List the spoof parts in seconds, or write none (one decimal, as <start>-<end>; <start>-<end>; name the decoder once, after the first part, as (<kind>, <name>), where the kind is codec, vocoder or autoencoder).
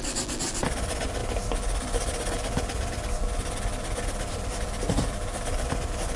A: none